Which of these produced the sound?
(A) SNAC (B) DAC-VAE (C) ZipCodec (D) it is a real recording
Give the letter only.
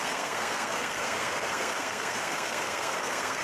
A